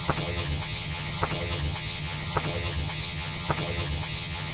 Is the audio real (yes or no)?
no